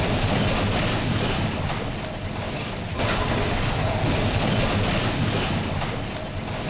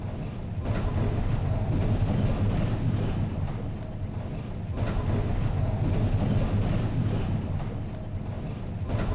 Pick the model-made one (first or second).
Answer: first